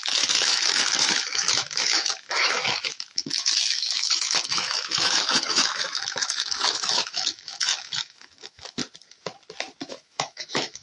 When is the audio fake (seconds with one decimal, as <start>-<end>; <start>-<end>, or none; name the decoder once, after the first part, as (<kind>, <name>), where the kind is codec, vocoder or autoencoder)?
0.0-8.8 (autoencoder, DAC-VAE); 9.9-10.8